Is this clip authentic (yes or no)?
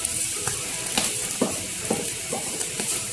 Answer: no